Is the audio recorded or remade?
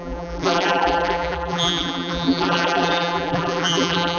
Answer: remade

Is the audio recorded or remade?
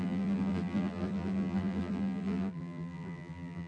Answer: remade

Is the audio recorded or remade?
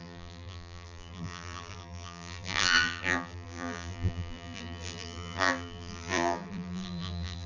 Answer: remade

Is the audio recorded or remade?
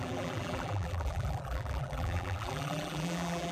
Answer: remade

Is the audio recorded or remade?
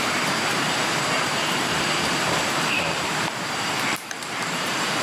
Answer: remade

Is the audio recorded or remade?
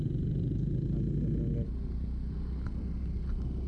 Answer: recorded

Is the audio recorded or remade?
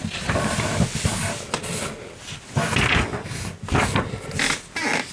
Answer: recorded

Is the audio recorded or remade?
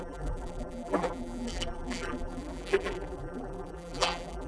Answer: remade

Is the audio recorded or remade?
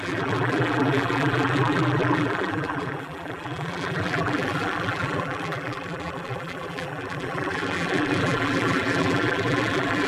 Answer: remade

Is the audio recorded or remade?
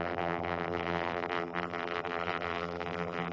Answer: remade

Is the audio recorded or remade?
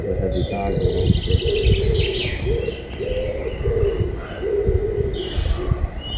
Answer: recorded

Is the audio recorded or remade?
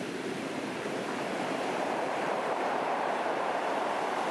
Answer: remade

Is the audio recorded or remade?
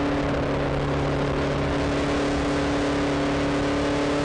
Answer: recorded